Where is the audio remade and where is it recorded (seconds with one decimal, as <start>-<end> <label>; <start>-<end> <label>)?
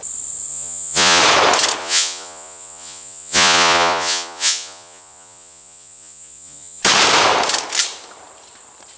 0.0-0.5 recorded; 0.5-1.2 remade; 1.2-1.8 recorded; 1.8-6.8 remade; 6.8-9.0 recorded